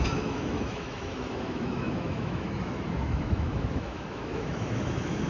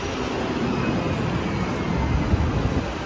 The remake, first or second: first